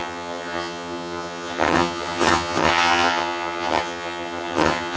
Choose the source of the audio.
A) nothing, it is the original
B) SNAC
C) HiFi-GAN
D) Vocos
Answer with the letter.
C